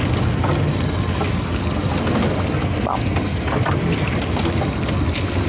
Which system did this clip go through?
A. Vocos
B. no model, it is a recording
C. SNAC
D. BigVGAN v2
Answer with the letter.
B